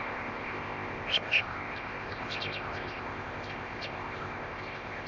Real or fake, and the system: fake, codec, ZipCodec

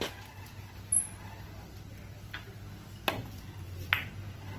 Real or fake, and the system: real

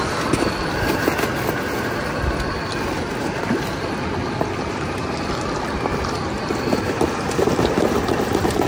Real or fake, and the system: real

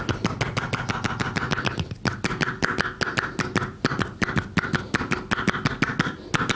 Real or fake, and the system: real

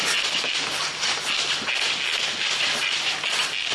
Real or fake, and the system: real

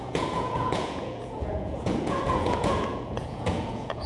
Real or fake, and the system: fake, vocoder, Vocos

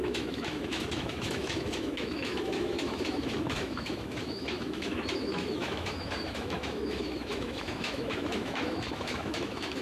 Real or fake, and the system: fake, autoencoder, DAC-VAE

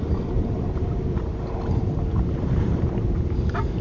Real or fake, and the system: fake, vocoder, BigVGAN v2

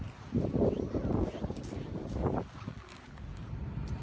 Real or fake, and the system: real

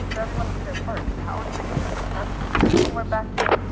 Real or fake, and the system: real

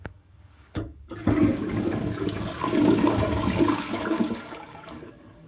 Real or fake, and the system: fake, codec, DAC